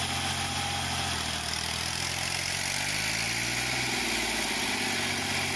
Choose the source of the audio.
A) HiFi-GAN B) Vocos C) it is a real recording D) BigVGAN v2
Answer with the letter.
C